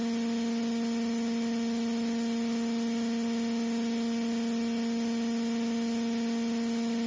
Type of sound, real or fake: real